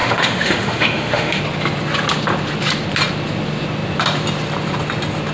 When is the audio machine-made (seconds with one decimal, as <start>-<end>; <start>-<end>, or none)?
0.0-1.4

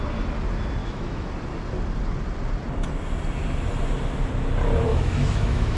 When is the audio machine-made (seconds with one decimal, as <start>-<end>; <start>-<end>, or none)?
0.8-1.3; 4.9-5.8

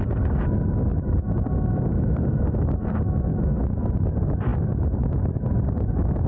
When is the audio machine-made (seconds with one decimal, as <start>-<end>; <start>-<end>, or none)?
0.9-3.9

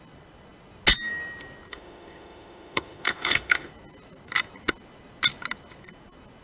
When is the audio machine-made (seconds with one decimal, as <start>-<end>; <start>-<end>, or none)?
1.7-3.7

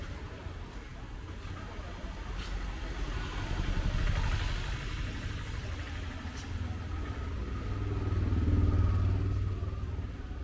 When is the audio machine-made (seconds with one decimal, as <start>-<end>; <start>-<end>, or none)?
none